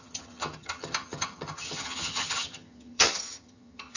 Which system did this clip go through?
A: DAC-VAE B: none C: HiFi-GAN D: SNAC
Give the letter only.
C